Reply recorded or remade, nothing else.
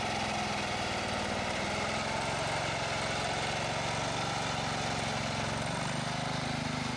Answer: recorded